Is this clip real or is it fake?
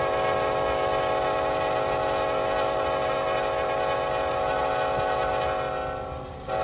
real